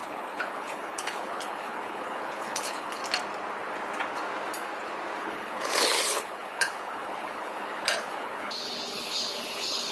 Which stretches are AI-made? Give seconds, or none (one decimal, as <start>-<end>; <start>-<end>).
0.0-3.0; 5.2-9.9